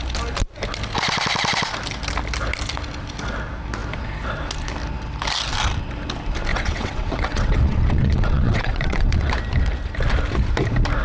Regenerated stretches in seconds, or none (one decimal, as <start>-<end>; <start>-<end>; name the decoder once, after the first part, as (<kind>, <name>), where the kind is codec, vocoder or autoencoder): 6.5-9.3 (vocoder, WaveNeXt)